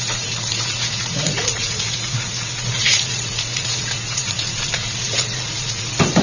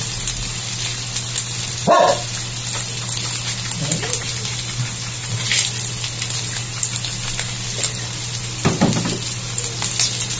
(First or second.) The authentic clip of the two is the second